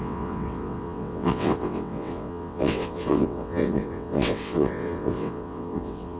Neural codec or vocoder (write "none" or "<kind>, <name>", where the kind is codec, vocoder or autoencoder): vocoder, WaveNeXt